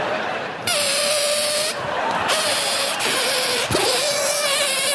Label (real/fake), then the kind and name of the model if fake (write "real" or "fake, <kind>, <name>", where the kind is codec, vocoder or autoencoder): fake, vocoder, BigVGAN v2